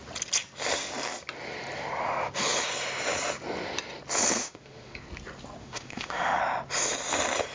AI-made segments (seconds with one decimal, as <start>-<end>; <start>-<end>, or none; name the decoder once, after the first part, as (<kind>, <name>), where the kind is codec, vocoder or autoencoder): 4.4-5.0 (autoencoder, DAC-VAE); 5.6-6.4